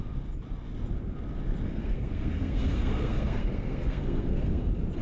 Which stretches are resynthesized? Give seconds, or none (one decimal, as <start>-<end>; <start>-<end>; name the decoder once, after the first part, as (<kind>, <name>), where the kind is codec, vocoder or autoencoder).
1.7-4.6 (codec, SNAC)